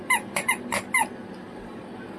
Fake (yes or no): no